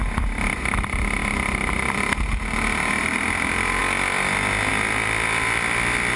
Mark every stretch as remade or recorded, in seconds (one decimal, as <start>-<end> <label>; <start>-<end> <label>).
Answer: 0.0-1.2 remade; 1.2-3.3 recorded; 3.3-3.8 remade; 3.8-4.7 recorded; 4.7-6.2 remade